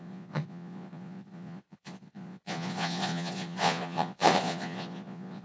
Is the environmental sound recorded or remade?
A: remade